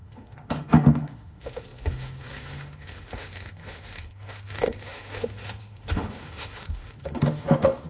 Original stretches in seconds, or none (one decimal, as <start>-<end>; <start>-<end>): none